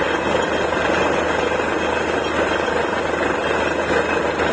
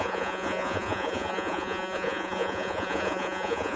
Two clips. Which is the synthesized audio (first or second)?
second